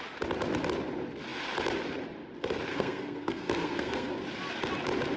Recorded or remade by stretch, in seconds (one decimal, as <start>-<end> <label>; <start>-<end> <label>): 0.0-2.7 recorded; 2.7-4.1 remade; 4.1-5.2 recorded